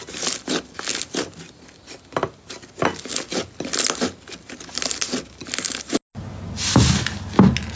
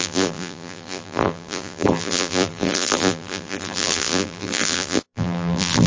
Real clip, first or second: first